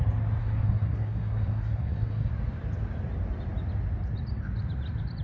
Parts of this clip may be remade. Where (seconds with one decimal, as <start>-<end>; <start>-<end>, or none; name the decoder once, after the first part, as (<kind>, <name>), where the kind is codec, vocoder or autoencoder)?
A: 0.4-2.3 (codec, SNAC)